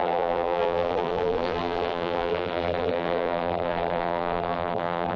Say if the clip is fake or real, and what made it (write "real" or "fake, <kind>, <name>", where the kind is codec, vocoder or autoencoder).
fake, vocoder, BigVGAN v2